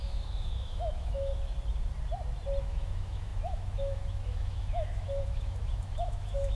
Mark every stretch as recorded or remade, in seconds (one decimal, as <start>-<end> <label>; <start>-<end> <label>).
0.0-1.3 remade; 1.3-2.6 recorded; 2.6-6.5 remade